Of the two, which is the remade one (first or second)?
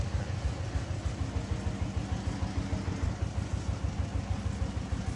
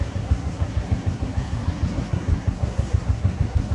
second